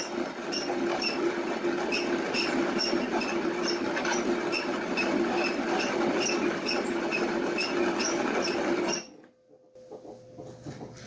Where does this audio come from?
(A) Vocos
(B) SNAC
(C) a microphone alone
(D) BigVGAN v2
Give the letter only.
C